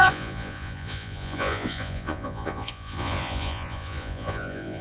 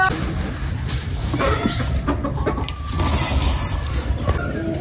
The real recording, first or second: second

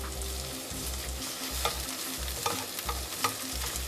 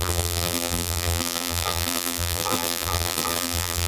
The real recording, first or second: first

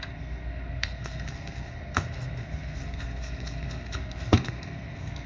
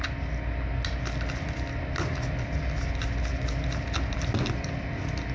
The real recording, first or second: second